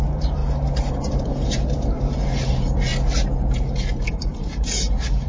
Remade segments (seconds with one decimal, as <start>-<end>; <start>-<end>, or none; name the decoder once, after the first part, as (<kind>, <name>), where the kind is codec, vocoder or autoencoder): 0.0-0.4 (vocoder, BigVGAN v2); 0.9-2.9; 3.5-5.3